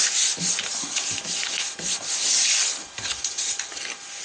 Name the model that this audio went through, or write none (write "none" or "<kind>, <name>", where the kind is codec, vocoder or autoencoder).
none